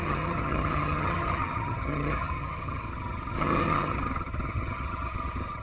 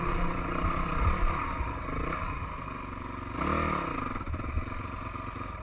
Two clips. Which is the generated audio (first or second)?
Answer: first